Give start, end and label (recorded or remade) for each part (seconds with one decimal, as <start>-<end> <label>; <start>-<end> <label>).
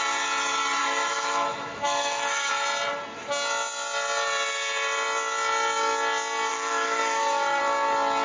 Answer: 0.0-0.8 recorded; 0.8-2.5 remade; 2.5-6.5 recorded; 6.5-7.6 remade; 7.6-8.2 recorded